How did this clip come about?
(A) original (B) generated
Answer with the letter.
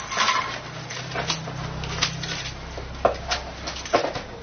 A